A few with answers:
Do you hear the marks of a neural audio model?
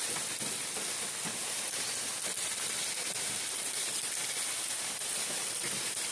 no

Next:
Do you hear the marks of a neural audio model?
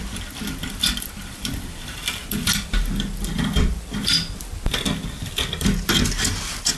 yes